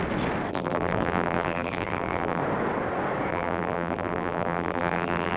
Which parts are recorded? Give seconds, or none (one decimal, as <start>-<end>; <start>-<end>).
0.0-0.5; 2.4-3.3